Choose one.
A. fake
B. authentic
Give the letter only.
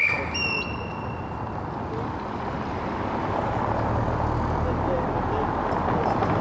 B